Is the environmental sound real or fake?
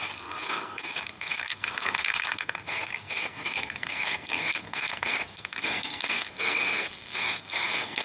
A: fake